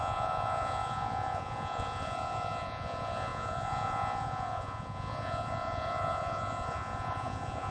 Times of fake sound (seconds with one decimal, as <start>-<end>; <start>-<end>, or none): 0.0-7.7